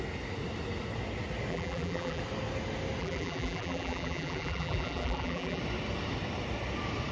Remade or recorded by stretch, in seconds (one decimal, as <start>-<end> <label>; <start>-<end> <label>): 0.0-1.5 recorded; 1.5-2.2 remade; 2.2-3.0 recorded; 3.0-5.6 remade; 5.6-7.1 recorded

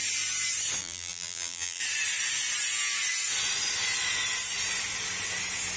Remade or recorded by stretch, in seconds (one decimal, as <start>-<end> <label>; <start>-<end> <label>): 0.0-0.8 recorded; 0.8-1.8 remade; 1.8-5.8 recorded